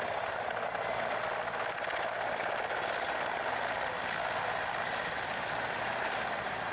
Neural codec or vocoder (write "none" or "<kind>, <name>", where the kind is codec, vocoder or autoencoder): none